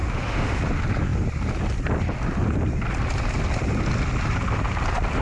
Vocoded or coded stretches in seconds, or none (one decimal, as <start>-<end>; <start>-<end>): 0.0-0.6